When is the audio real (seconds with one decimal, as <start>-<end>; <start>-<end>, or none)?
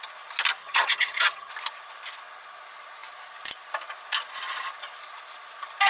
0.0-0.6; 1.5-5.9